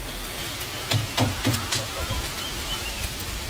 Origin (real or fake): real